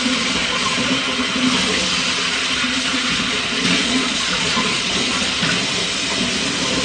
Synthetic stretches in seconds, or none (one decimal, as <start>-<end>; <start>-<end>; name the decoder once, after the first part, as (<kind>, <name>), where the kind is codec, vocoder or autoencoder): 0.4-0.9 (vocoder, Vocos); 2.9-4.9